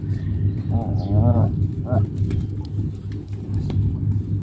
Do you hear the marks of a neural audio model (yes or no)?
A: no